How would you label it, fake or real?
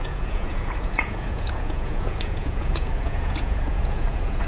fake